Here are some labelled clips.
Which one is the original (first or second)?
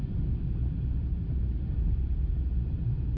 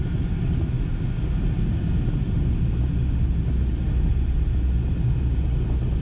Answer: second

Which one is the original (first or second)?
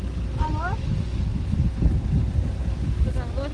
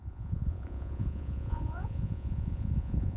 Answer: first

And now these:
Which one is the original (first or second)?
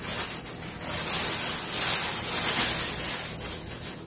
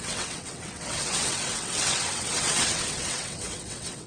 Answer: first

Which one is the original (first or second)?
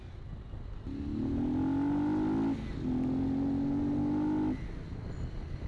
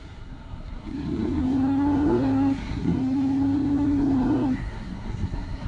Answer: first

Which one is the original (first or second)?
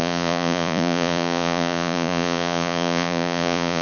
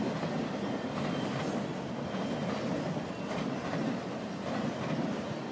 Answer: second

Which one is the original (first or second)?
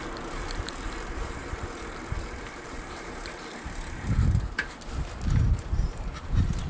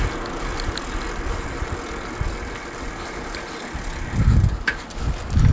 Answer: second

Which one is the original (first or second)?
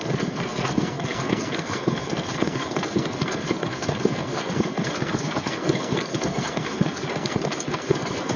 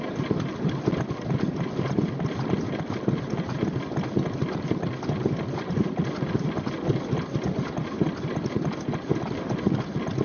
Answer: second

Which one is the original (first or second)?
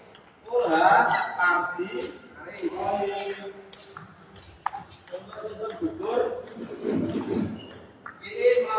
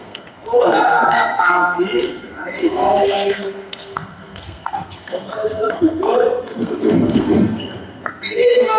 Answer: first